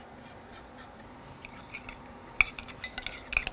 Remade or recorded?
recorded